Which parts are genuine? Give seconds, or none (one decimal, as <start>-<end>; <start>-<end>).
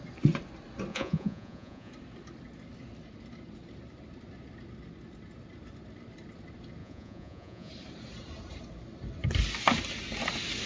0.0-0.9; 1.9-6.8; 7.7-10.7